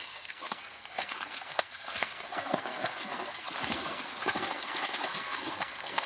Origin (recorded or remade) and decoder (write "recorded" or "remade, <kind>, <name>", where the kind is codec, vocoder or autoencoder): remade, codec, SNAC